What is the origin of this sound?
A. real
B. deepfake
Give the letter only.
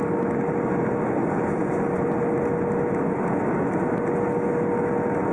A